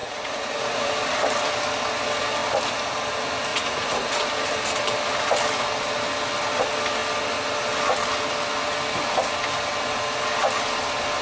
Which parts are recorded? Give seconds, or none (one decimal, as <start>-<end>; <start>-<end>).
0.9-3.5; 4.1-11.2